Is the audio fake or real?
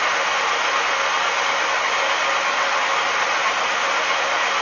real